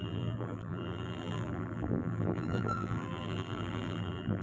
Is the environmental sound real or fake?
fake